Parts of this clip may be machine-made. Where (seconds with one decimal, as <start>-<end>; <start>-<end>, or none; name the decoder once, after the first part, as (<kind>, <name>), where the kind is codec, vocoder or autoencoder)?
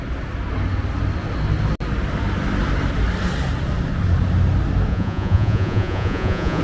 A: 4.9-6.6 (vocoder, Vocos)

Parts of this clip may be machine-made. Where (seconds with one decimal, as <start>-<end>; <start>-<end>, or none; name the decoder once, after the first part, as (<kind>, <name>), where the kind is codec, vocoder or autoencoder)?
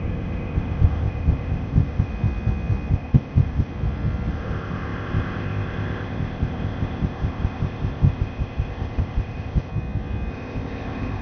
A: 0.0-2.1 (codec, ZipCodec); 2.9-3.7; 4.3-9.7; 10.3-11.2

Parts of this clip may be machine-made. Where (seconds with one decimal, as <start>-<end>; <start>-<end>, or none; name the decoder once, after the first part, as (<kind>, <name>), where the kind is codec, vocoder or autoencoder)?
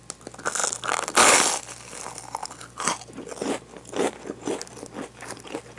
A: none